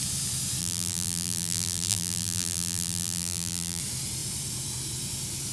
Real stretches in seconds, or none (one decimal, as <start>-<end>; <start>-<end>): 0.0-0.6; 3.8-5.5